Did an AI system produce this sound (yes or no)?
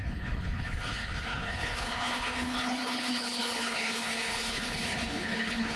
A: yes